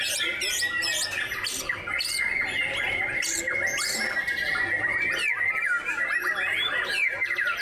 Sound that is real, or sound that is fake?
real